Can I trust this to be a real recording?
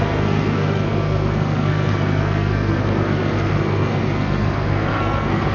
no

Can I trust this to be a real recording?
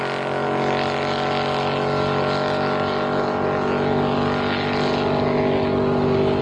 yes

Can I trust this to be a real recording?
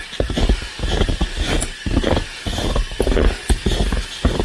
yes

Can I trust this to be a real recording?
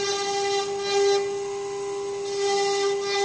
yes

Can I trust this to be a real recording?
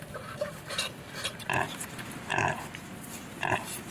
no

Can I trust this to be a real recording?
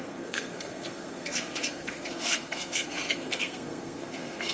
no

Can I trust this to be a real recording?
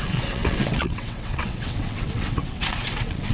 no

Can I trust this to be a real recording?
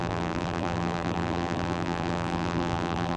no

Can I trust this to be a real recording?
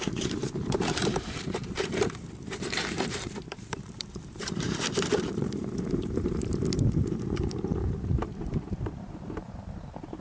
no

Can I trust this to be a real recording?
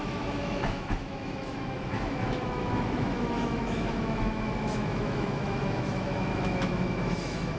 no